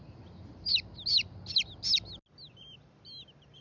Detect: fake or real real